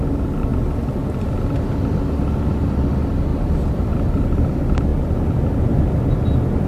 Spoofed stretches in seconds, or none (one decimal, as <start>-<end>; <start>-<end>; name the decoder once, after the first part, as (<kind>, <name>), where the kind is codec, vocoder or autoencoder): 3.3-4.1 (vocoder, BigVGAN v2)

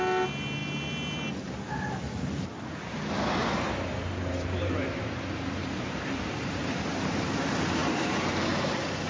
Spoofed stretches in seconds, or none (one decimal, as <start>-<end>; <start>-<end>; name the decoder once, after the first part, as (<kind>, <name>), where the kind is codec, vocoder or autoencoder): 3.4-7.0 (vocoder, BigVGAN v2); 7.8-8.3

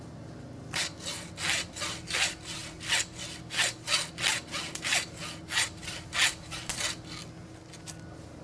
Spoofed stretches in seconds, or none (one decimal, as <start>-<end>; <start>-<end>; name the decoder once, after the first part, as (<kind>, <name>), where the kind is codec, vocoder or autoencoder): none

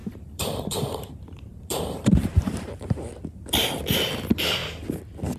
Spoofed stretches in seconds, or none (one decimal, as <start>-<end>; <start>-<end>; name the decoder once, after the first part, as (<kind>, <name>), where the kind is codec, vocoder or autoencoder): 0.0-3.2 (vocoder, BigVGAN v2)

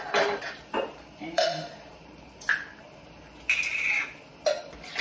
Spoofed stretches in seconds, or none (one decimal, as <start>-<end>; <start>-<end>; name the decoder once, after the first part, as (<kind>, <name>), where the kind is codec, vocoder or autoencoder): 0.7-3.3 (vocoder, BigVGAN v2)

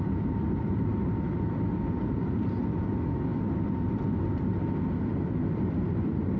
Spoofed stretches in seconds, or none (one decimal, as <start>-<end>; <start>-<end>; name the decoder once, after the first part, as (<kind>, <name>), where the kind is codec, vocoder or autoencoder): none

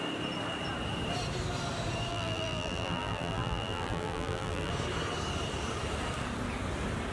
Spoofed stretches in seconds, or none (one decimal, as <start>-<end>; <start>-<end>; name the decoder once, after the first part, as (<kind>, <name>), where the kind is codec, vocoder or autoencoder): 2.1-4.7 (vocoder, BigVGAN v2)

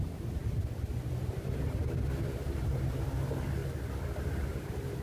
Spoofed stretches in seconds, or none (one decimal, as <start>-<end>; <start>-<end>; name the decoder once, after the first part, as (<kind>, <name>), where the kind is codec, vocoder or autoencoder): 0.0-0.4 (vocoder, BigVGAN v2); 1.3-3.6; 4.2-5.0